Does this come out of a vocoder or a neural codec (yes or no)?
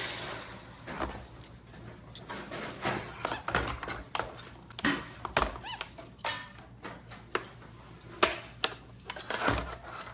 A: no